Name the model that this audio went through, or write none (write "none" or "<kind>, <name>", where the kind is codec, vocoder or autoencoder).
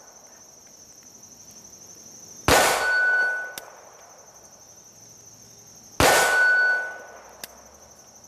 none